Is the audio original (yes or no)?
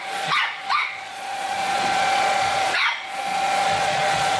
no